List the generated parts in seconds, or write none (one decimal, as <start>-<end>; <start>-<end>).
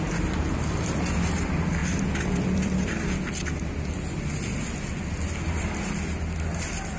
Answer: 1.8-3.6